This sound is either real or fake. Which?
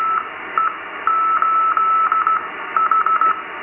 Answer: real